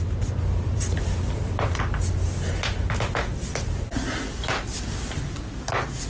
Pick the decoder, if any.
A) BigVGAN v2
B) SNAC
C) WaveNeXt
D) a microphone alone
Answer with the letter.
D